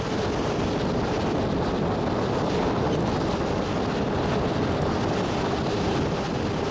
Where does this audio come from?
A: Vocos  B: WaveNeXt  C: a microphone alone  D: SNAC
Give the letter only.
C